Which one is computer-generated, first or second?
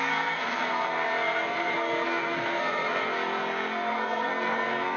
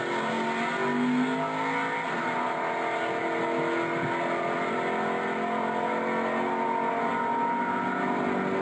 first